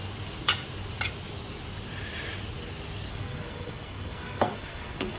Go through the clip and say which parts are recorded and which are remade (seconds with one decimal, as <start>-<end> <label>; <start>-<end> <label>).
0.0-3.1 recorded; 3.1-5.2 remade